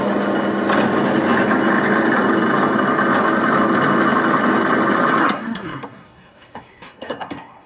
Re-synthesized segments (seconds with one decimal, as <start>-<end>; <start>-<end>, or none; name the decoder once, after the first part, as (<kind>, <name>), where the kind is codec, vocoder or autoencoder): 5.2-7.7 (codec, SNAC)